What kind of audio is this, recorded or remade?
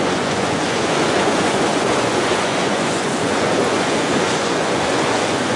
remade